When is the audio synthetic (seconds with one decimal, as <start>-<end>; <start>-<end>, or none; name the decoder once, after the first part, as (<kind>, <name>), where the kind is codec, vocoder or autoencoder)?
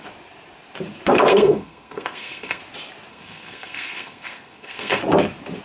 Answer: 1.3-2.6 (codec, SNAC); 3.1-5.0